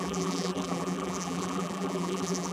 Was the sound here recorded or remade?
remade